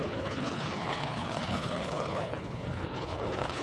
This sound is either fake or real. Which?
fake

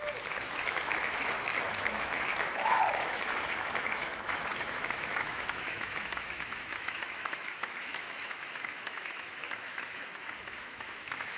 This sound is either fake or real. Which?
fake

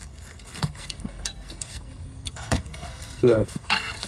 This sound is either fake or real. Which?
fake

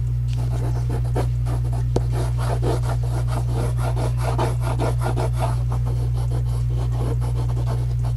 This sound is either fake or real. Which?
real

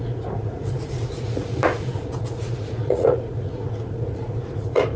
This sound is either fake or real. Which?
fake